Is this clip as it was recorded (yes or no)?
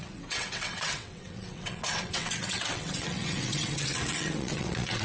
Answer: no